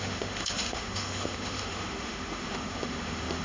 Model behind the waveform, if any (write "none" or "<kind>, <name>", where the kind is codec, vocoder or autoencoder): autoencoder, DAC-VAE